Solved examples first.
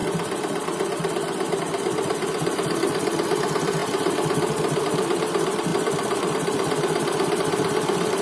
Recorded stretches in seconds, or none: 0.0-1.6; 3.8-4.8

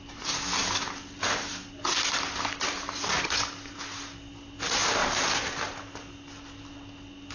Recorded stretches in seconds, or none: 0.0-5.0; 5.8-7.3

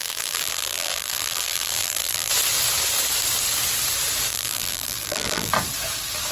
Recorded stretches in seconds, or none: 2.3-4.3; 5.5-6.3

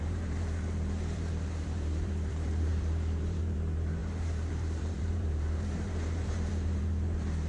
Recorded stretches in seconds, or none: none